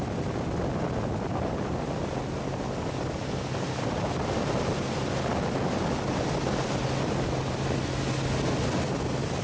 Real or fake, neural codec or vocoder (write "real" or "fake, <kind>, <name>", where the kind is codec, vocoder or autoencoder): real